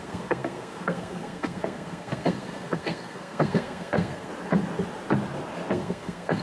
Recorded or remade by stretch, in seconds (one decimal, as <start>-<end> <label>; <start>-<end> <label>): 0.0-4.3 remade; 4.3-5.7 recorded; 5.7-6.4 remade